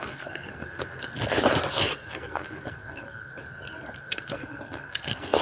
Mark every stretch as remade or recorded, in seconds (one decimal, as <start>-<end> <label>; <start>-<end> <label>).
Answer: 0.0-1.1 remade; 1.1-1.7 recorded; 1.7-3.3 remade; 3.3-4.0 recorded; 4.0-5.4 remade